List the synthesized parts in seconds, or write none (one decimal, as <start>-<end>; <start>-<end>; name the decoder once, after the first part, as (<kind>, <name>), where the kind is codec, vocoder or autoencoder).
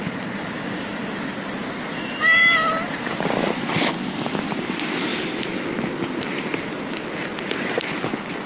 none